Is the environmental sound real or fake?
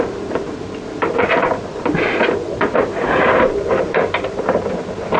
fake